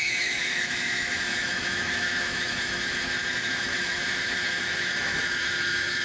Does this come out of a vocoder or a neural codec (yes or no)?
yes